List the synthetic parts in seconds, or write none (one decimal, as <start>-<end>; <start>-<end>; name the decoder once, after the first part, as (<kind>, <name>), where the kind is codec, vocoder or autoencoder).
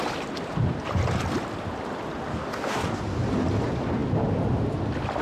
2.3-3.0 (codec, DAC)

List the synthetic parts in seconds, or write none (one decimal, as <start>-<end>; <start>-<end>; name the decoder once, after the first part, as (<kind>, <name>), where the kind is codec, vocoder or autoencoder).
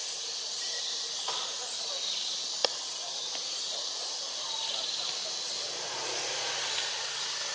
0.0-0.6 (vocoder, BigVGAN v2); 2.6-4.6; 6.0-6.9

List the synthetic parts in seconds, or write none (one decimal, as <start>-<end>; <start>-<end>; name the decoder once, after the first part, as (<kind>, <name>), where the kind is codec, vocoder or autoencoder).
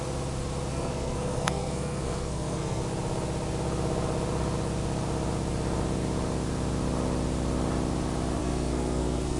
0.7-2.8 (codec, SNAC); 8.4-9.4